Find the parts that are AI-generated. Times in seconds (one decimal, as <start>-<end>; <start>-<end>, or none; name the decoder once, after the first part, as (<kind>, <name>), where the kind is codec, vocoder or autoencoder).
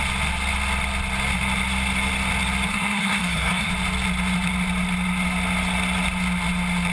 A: 2.7-3.7 (codec, SNAC)